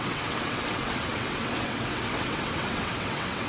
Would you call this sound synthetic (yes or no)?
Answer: yes